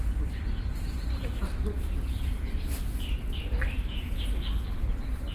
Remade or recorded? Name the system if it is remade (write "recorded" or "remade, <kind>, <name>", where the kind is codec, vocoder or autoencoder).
recorded